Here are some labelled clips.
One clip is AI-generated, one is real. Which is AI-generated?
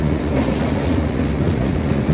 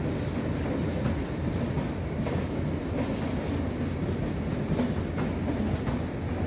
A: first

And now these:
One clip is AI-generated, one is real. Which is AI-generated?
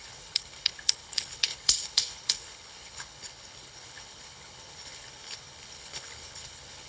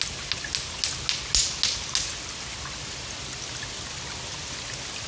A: first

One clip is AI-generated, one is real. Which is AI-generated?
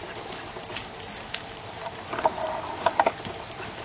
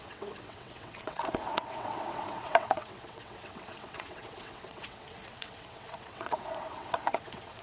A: second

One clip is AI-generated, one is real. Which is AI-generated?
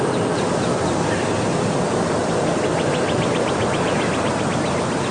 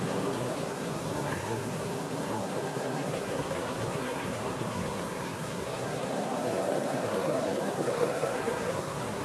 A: second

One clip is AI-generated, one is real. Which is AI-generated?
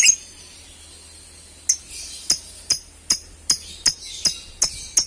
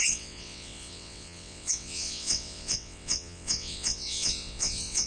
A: second